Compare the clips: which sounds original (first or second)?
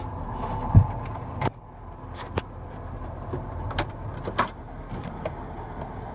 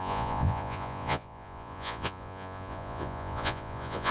first